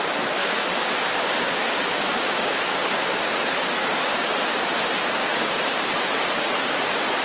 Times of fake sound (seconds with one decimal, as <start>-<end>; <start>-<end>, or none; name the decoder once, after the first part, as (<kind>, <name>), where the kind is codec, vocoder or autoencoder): 0.4-3.2 (codec, DAC); 3.8-4.4